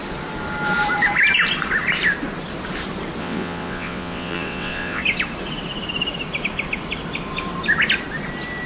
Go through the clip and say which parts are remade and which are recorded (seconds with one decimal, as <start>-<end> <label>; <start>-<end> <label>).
0.0-3.2 recorded; 3.2-5.0 remade; 5.0-8.7 recorded